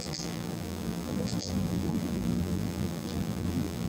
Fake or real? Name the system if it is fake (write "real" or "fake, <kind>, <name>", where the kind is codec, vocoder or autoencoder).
fake, vocoder, BigVGAN v2